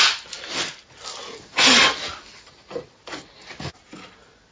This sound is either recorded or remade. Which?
recorded